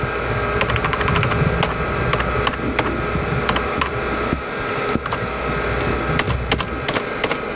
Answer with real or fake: real